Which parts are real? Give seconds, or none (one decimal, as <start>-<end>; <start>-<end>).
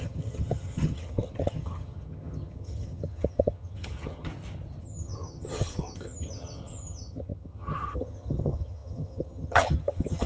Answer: 4.3-4.8